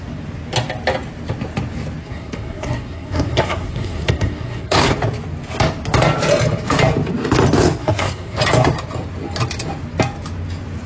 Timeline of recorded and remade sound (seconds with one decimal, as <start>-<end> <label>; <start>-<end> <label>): 0.0-2.0 recorded; 2.0-4.9 remade; 4.9-7.8 recorded; 7.8-8.4 remade; 8.4-10.9 recorded